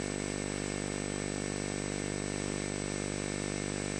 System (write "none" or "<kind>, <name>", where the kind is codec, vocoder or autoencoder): none